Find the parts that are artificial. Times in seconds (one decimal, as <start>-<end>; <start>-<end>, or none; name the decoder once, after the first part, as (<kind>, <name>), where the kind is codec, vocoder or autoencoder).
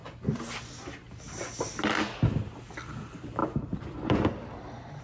3.0-5.0 (vocoder, BigVGAN v2)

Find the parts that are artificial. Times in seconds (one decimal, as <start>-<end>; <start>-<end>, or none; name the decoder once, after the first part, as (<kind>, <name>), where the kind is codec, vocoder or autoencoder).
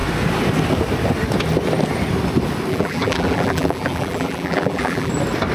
2.7-5.1 (vocoder, BigVGAN v2)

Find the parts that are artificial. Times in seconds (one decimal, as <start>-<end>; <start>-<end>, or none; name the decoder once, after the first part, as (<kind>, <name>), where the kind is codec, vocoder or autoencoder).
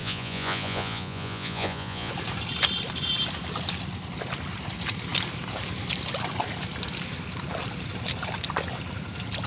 0.0-2.1 (vocoder, Vocos)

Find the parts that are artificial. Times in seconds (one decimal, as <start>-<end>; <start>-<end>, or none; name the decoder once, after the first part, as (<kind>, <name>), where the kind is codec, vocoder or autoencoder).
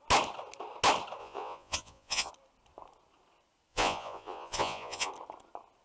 1.2-2.3 (vocoder, Vocos); 3.7-5.1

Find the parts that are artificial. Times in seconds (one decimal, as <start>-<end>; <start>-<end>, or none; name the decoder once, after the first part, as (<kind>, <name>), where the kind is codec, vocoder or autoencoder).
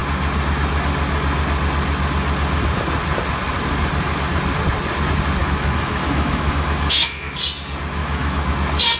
5.4-7.4 (autoencoder, DAC-VAE); 8.0-8.5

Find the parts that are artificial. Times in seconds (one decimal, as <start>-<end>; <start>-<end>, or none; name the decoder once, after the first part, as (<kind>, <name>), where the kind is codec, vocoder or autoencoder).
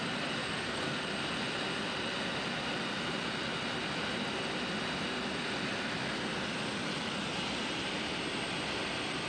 0.4-1.0 (codec, SNAC)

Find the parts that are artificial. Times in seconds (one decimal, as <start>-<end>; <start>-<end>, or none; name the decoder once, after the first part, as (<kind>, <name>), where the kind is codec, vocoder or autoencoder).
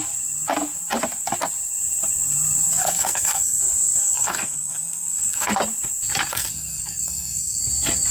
2.8-3.6 (codec, SNAC); 4.0-5.5; 6.3-7.6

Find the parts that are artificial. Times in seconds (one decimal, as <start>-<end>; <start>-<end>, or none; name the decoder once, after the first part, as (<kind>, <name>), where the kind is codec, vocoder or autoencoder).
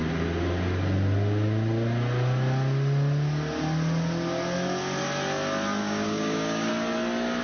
5.8-6.7 (codec, DAC)